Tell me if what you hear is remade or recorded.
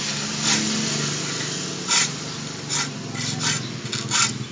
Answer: recorded